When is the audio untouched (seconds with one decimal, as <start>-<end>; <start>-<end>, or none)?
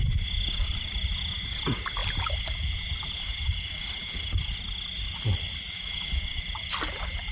0.0-7.3